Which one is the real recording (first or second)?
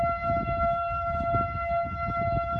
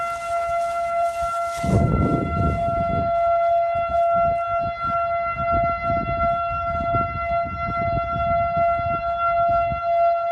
second